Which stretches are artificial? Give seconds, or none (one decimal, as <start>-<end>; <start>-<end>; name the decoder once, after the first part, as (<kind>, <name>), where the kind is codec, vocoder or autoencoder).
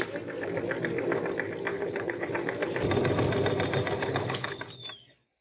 1.7-2.3 (codec, HILCodec); 4.0-4.6